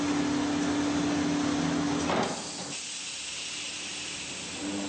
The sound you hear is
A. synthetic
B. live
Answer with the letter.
B